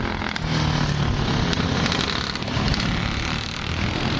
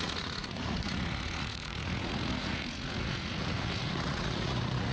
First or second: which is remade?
second